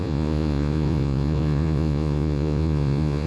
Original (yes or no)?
no